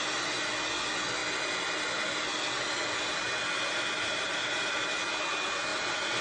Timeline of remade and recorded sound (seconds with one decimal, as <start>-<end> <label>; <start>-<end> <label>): 0.0-6.2 recorded